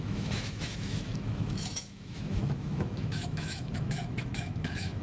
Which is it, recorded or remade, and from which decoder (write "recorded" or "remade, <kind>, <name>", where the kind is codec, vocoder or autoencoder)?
remade, autoencoder, DAC-VAE